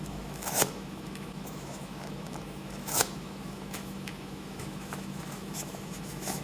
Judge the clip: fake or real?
fake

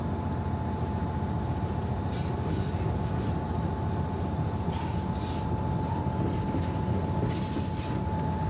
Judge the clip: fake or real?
real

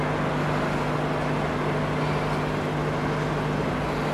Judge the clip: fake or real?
real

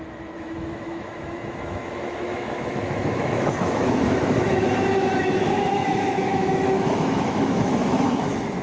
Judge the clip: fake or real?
fake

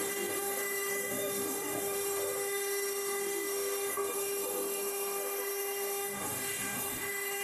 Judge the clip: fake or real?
fake